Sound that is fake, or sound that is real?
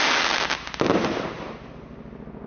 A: real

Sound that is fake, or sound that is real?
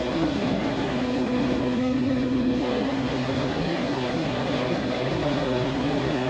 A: fake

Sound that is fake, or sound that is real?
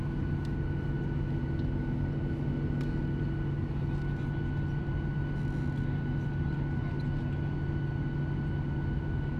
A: real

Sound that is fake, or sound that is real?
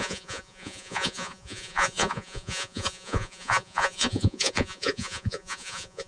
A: fake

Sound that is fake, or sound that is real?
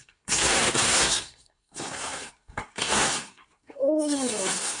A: fake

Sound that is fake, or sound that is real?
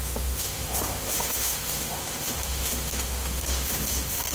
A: fake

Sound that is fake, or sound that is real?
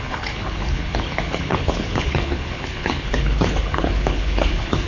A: fake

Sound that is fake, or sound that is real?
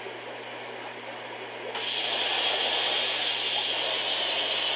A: real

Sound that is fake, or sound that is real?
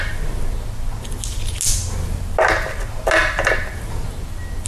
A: real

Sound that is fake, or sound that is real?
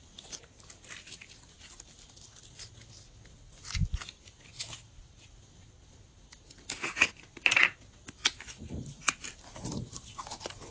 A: real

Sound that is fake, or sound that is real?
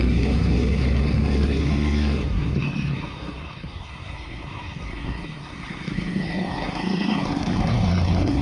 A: fake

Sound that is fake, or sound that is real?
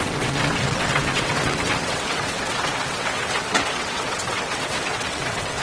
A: fake